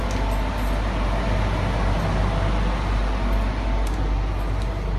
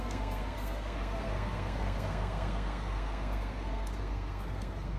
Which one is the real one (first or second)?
first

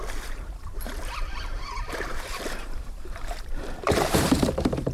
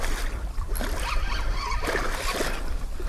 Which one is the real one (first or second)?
second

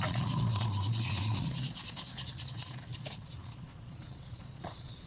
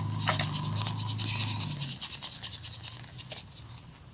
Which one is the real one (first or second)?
second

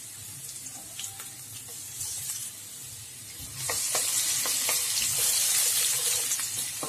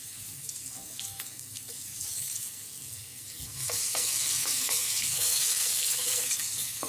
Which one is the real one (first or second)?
first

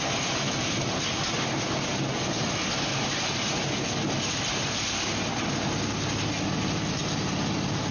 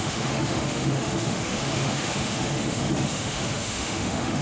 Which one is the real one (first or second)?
first